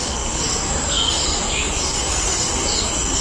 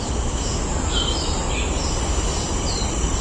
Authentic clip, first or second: second